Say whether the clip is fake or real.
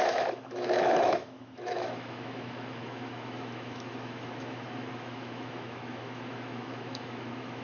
fake